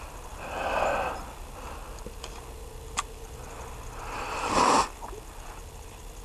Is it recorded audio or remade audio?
recorded